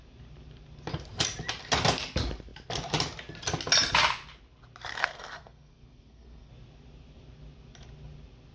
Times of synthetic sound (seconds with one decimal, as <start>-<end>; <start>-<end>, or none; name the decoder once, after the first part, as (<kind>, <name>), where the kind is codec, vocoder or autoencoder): 4.9-6.5 (codec, SNAC)